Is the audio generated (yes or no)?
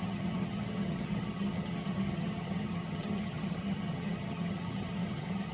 yes